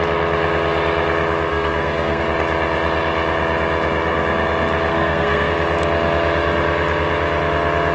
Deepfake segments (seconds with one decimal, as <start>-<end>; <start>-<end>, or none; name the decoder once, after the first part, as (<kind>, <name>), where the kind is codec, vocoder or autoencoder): 1.5-2.2 (codec, SNAC); 4.9-5.5

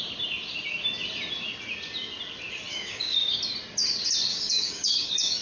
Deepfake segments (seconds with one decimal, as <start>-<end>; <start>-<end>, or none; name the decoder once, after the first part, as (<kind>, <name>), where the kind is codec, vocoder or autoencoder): 2.7-3.4 (codec, DAC); 4.3-5.4

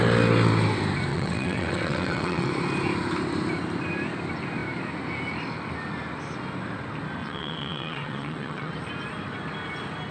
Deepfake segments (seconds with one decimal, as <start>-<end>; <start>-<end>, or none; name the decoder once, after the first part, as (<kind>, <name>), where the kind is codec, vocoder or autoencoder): 1.1-2.5 (vocoder, WaveNeXt); 7.2-8.7

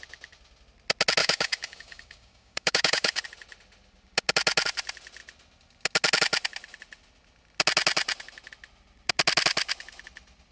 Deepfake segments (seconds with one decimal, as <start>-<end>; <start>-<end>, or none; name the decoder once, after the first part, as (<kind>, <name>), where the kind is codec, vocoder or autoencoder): 1.2-3.2 (codec, DAC)